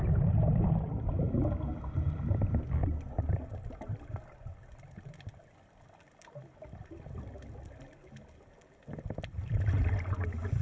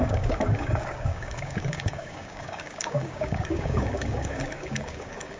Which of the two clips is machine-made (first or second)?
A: second